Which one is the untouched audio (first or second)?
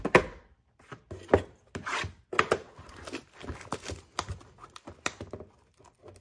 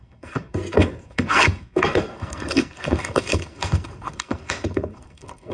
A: first